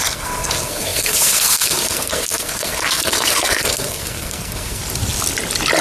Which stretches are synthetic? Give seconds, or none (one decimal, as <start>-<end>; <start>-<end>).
0.0-4.8

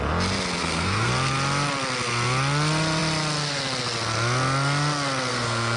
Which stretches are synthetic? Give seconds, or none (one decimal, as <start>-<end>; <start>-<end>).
0.6-1.1; 5.3-5.8

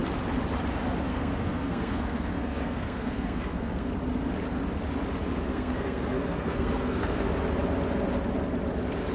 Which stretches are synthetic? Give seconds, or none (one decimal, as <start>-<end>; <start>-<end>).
1.1-3.9; 5.5-7.3

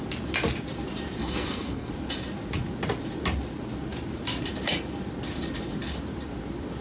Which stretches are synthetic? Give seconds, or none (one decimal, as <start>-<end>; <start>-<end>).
1.2-1.9

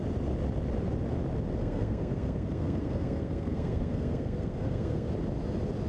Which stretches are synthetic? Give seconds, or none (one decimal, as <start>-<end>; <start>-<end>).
1.6-5.1